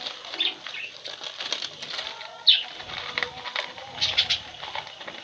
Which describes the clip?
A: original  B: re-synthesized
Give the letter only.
A